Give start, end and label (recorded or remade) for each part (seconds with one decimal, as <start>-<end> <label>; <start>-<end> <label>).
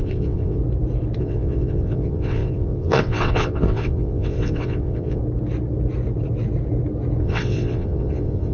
0.0-0.6 remade; 0.6-1.2 recorded; 1.2-5.2 remade; 5.2-7.2 recorded; 7.2-8.5 remade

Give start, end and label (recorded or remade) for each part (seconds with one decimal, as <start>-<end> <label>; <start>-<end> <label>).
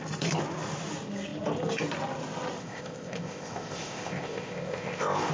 0.0-2.6 recorded; 2.6-5.3 remade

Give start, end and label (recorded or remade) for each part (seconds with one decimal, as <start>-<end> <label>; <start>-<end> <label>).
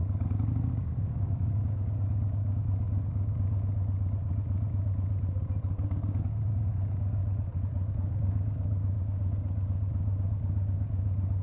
0.0-0.7 recorded; 0.7-3.7 remade; 3.7-5.8 recorded; 5.8-7.2 remade; 7.2-7.9 recorded; 7.9-11.4 remade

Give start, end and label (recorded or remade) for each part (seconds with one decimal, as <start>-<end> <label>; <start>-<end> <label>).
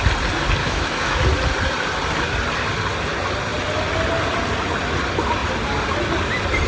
0.0-0.6 recorded; 0.6-1.2 remade; 1.2-6.7 recorded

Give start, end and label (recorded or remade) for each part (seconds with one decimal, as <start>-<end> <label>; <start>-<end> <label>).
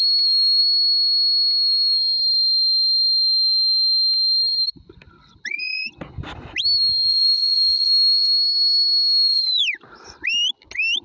0.0-7.1 recorded; 7.1-9.6 remade; 9.6-11.0 recorded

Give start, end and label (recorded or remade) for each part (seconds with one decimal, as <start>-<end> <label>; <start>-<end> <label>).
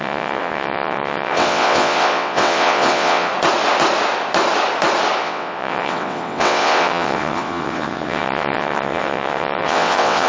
0.0-3.3 remade; 3.3-5.2 recorded; 5.2-10.3 remade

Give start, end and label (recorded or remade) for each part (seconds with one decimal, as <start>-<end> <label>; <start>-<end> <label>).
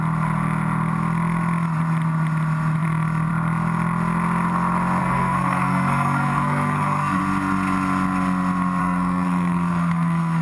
0.0-5.0 recorded; 5.0-7.2 remade; 7.2-8.8 recorded; 8.8-10.4 remade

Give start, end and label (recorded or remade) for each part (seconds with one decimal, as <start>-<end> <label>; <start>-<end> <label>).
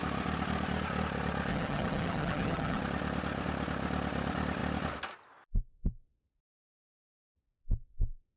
0.0-1.5 recorded; 1.5-2.8 remade; 2.8-8.4 recorded